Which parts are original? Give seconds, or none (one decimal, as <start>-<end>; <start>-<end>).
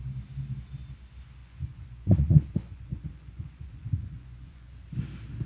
0.0-1.4; 4.7-5.5